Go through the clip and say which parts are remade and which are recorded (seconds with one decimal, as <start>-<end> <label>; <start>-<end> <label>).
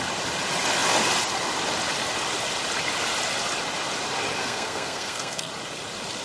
0.0-4.4 recorded; 4.4-5.5 remade; 5.5-6.2 recorded